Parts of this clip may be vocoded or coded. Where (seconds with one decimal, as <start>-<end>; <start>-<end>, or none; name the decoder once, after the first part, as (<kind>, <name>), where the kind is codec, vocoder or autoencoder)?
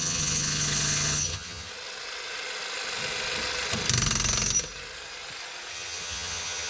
0.0-1.7 (vocoder, HiFi-GAN); 5.7-6.7